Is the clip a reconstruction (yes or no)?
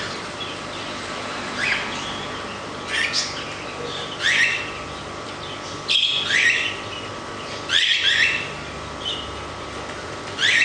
yes